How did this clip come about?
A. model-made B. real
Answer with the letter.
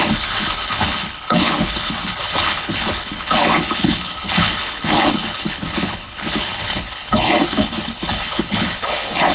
A